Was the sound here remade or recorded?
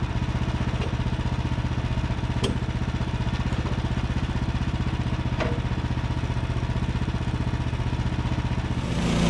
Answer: recorded